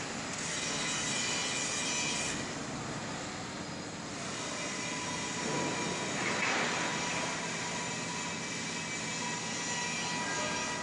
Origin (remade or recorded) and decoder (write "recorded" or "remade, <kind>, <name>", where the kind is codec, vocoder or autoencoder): recorded